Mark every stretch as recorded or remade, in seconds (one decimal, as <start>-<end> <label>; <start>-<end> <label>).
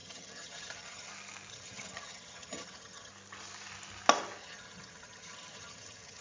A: 0.0-1.1 remade; 1.1-1.5 recorded; 1.5-3.1 remade; 3.1-4.4 recorded; 4.4-6.2 remade